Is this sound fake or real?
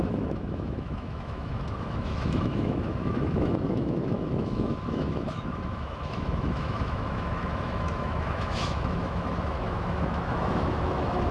fake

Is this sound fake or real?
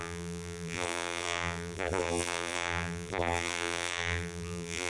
fake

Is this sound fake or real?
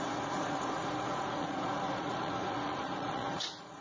fake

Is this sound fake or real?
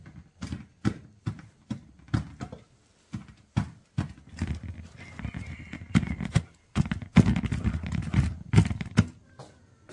real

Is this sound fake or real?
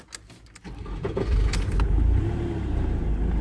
real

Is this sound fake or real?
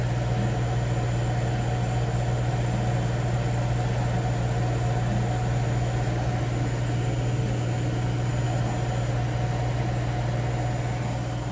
real